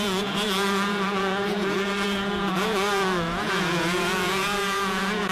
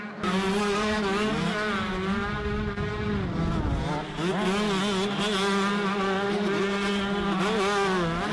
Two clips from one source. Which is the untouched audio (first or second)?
second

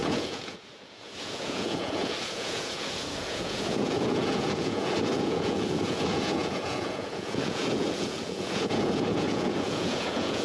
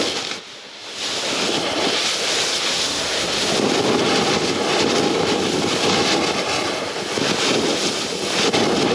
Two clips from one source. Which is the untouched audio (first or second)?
second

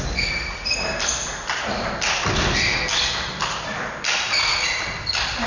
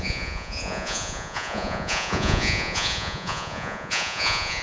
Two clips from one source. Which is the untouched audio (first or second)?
first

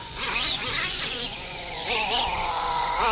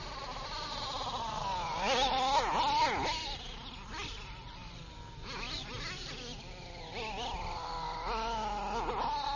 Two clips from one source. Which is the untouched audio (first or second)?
second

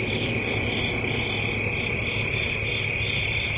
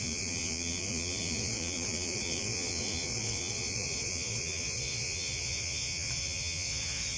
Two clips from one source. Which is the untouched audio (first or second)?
first